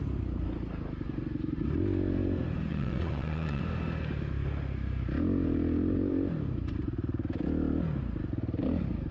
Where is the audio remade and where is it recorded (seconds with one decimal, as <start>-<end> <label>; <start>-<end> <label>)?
0.0-2.7 recorded; 2.7-3.6 remade; 3.6-9.1 recorded